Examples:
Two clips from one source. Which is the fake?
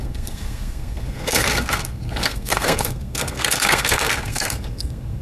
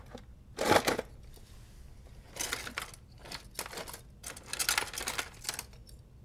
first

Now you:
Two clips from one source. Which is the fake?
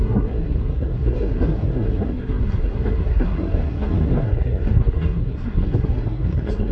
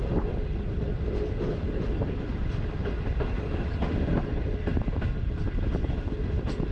first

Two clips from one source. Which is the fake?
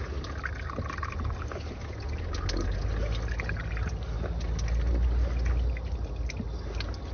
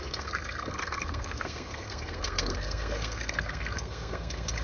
second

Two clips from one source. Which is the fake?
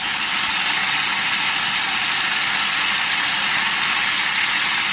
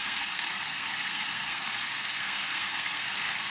second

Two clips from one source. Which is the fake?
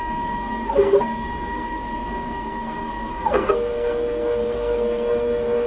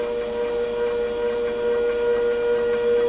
first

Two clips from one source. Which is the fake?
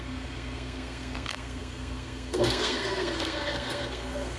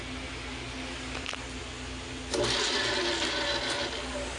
first